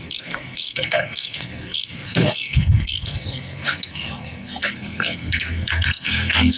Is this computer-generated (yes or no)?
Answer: yes